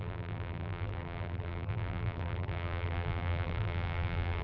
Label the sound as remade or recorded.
remade